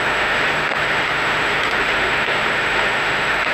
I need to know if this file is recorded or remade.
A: remade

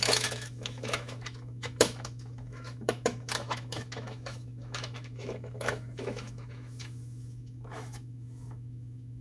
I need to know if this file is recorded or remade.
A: remade